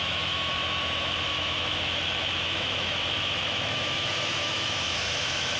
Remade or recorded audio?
remade